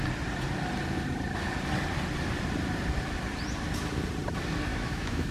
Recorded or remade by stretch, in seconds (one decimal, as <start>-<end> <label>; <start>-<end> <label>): 0.0-4.7 recorded; 4.7-5.3 remade